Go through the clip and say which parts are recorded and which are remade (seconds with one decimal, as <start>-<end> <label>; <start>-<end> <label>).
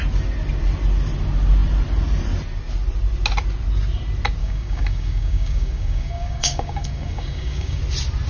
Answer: 0.0-4.4 recorded; 4.4-7.8 remade; 7.8-8.3 recorded